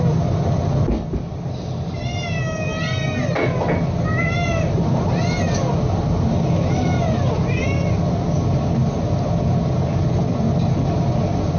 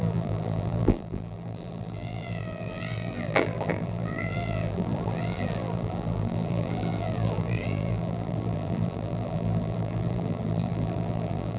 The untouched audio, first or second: first